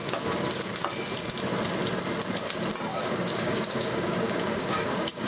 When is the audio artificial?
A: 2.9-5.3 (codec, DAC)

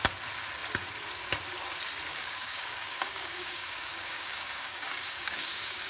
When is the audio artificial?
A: 2.1-5.9 (codec, DAC)